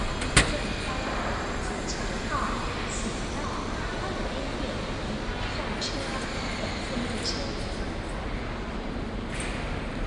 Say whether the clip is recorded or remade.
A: recorded